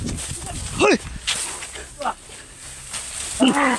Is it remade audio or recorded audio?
recorded